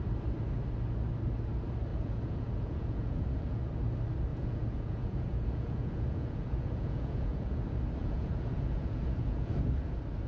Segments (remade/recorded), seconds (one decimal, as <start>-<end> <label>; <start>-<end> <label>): 0.0-1.9 recorded; 1.9-3.6 remade; 3.6-4.3 recorded; 4.3-7.6 remade; 7.6-8.0 recorded; 8.0-9.9 remade; 9.9-10.3 recorded